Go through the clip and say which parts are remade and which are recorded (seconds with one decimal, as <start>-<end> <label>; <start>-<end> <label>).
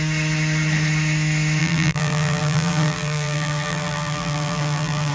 0.0-1.6 recorded; 1.6-5.1 remade